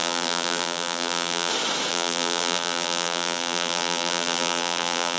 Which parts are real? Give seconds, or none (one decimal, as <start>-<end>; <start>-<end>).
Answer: 1.5-1.9